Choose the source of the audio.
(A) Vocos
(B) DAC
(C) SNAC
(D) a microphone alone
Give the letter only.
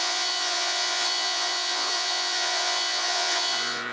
A